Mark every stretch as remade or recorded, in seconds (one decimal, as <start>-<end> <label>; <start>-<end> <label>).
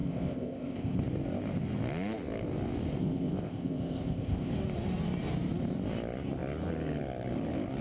0.0-1.0 remade; 1.0-3.0 recorded; 3.0-4.5 remade; 4.5-7.8 recorded